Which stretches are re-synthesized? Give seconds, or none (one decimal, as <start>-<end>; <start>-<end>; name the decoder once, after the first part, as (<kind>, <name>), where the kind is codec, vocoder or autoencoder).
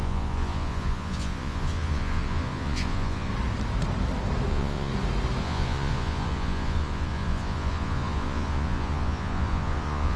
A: 0.0-3.3 (vocoder, Vocos); 4.5-4.9; 5.4-10.2